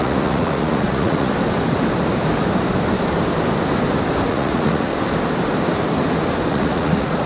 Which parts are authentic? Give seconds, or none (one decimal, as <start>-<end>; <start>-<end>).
1.3-4.3; 4.9-6.5